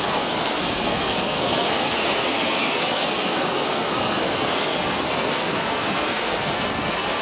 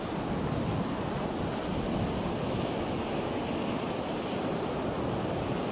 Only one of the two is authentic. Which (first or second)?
second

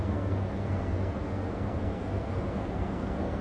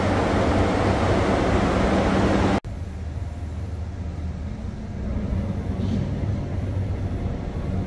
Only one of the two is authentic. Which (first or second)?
second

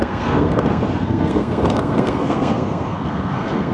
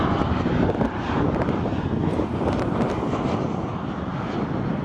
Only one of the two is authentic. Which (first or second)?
second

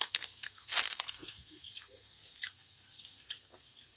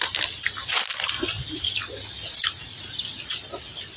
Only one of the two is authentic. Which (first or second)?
second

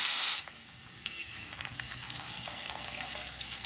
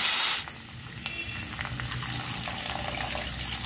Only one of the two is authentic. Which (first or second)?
second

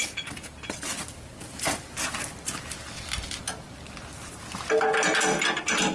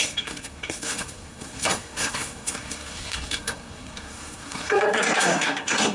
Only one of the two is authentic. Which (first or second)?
first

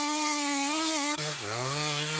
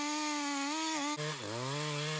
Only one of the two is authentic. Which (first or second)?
second